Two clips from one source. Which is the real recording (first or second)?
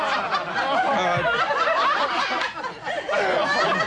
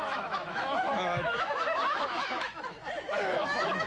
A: first